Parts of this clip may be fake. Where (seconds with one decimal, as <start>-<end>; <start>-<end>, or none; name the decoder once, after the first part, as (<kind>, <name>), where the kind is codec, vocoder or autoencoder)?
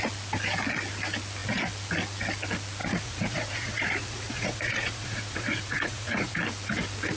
2.8-6.3 (vocoder, Vocos)